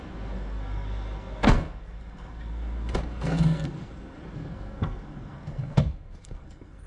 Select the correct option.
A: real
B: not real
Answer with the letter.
B